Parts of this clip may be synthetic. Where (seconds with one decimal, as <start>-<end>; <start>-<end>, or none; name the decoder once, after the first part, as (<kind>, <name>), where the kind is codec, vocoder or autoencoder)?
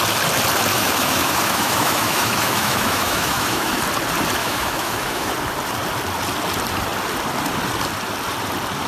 0.7-3.8 (autoencoder, DAC-VAE); 4.4-5.3